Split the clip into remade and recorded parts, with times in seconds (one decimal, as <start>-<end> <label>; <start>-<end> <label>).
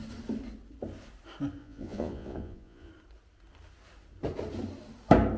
0.0-1.6 recorded; 1.6-2.9 remade; 2.9-5.4 recorded